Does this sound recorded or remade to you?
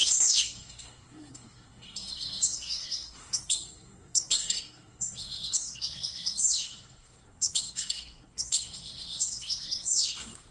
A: remade